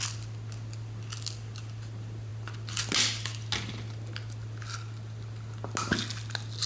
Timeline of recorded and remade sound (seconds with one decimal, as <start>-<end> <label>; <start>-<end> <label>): 0.0-6.7 recorded